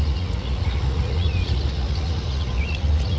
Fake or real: fake